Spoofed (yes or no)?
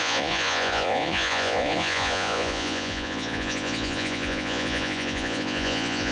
yes